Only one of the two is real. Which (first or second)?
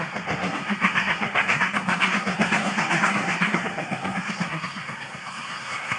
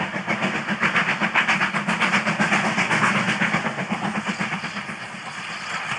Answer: second